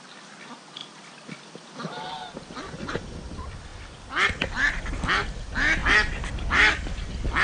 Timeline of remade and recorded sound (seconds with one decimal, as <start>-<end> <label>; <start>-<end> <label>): 0.0-7.4 recorded